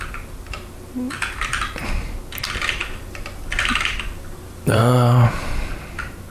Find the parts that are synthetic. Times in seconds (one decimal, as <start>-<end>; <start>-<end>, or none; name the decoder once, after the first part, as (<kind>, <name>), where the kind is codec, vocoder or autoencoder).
2.8-4.8 (vocoder, BigVGAN v2)